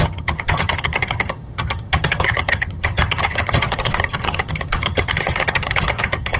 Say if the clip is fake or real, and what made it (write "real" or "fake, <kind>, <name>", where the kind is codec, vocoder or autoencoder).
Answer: fake, vocoder, HiFi-GAN